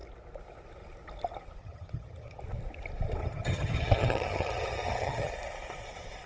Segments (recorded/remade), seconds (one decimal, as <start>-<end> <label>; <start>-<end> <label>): 0.0-1.6 recorded; 1.6-2.4 remade; 2.4-3.2 recorded; 3.2-5.3 remade; 5.3-6.3 recorded